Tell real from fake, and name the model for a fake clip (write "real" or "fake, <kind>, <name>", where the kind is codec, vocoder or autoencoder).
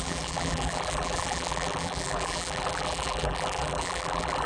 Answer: fake, vocoder, BigVGAN v2